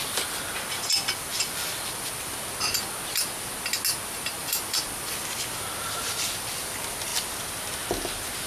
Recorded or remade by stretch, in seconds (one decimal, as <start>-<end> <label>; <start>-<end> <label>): 0.0-1.3 recorded; 1.3-2.3 remade; 2.3-4.4 recorded; 4.4-5.2 remade; 5.2-8.5 recorded